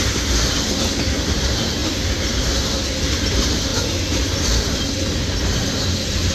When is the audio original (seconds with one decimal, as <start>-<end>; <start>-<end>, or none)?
0.0-3.7; 4.8-6.3